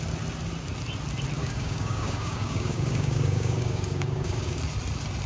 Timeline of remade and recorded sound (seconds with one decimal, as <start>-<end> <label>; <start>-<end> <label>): 0.0-1.4 recorded; 1.4-4.6 remade; 4.6-5.3 recorded